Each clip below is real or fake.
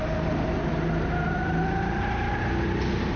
real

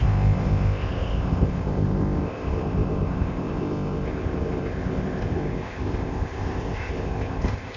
fake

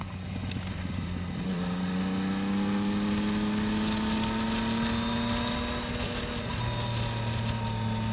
real